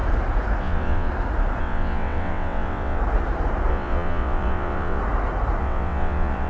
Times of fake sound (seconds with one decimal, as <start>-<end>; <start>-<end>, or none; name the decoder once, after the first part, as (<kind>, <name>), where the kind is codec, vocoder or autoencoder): 0.6-1.1 (vocoder, WaveNeXt); 1.6-3.0; 3.7-5.0; 5.6-6.5